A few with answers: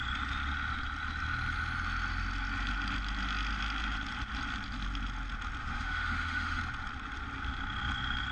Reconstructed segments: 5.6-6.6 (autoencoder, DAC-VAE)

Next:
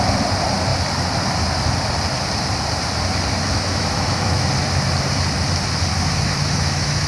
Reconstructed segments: 3.4-4.5 (autoencoder, DAC-VAE); 5.9-7.1

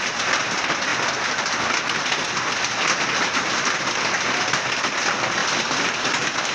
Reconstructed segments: none

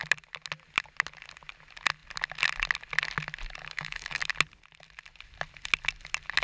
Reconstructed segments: 3.6-4.2 (autoencoder, DAC-VAE)

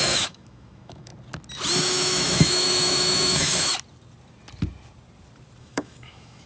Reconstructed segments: 0.0-1.1 (autoencoder, DAC-VAE); 1.8-3.7; 5.6-6.5

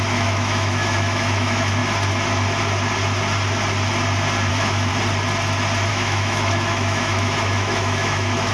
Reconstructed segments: 0.0-1.8 (autoencoder, DAC-VAE); 4.5-4.9; 5.9-8.5

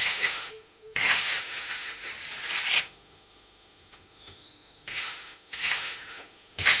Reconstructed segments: 0.0-2.1 (autoencoder, DAC-VAE); 2.8-6.8